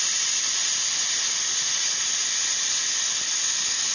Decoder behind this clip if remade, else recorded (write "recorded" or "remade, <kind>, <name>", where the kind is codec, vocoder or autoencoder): recorded